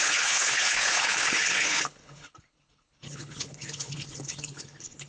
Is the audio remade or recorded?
remade